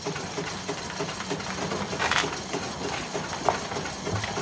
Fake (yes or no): no